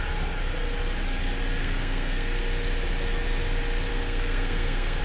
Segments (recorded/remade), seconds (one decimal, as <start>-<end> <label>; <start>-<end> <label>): 0.0-1.6 recorded; 1.6-2.4 remade; 2.4-3.9 recorded; 3.9-5.0 remade

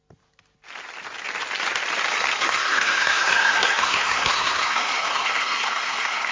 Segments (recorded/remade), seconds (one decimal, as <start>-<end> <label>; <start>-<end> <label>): 0.0-2.4 recorded; 2.4-6.3 remade

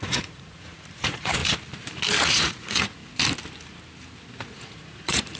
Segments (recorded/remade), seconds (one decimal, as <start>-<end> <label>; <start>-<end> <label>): 0.0-1.4 remade; 1.4-2.2 recorded; 2.2-3.0 remade; 3.0-4.5 recorded; 4.5-5.4 remade

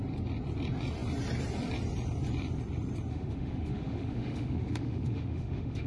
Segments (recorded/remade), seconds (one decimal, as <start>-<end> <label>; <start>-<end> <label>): 0.0-3.1 recorded; 3.1-5.9 remade

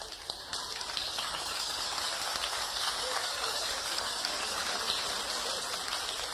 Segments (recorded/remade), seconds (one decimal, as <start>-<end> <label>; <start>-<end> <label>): 0.0-1.0 recorded; 1.0-4.8 remade; 4.8-6.3 recorded